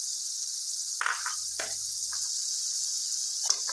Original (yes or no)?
yes